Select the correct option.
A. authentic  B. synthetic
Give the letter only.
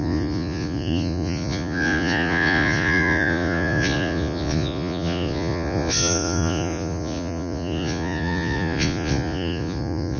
B